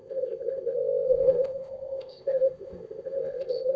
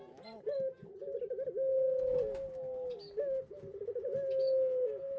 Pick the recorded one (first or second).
second